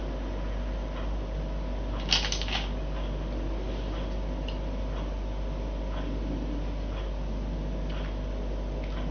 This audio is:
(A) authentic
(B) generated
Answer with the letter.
A